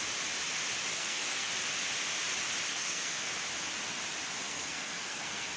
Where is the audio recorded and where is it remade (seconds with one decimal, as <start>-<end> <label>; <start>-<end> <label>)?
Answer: 0.0-0.9 recorded; 0.9-1.5 remade; 1.5-2.7 recorded; 2.7-3.3 remade; 3.3-4.4 recorded; 4.4-5.6 remade